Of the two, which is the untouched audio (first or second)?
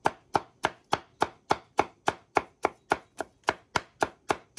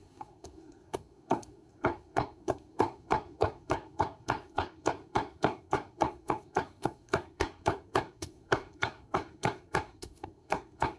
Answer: first